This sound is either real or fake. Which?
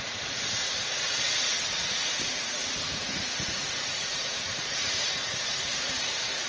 fake